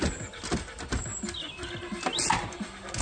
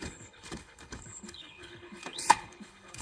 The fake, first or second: second